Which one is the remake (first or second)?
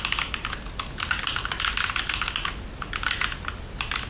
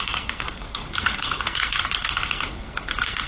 second